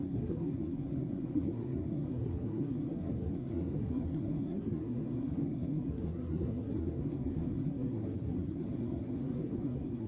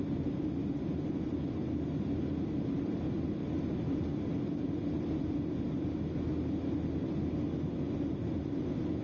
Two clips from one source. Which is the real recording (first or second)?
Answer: second